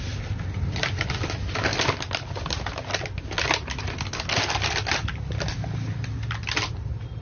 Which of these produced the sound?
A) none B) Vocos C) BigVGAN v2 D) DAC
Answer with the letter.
A